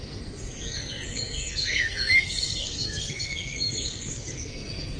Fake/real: fake